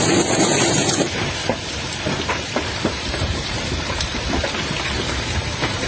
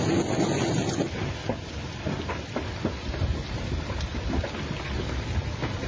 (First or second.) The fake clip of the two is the first